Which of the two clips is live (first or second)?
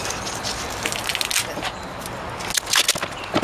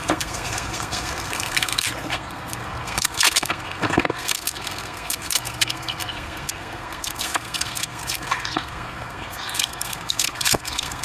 first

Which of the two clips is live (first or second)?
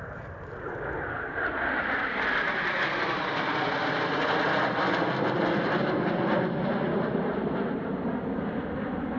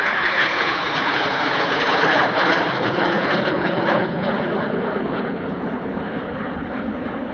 first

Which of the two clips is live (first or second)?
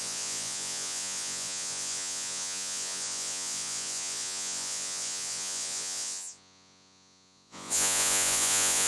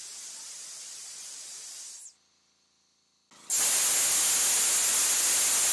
second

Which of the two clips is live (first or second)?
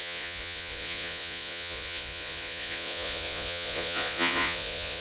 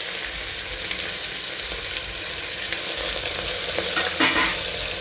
second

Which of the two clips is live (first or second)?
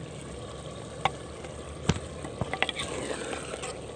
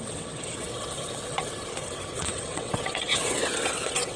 first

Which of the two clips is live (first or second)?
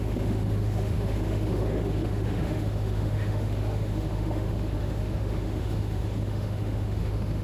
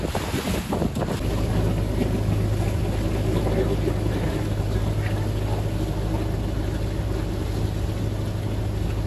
second